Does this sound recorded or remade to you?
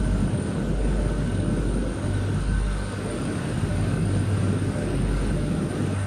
remade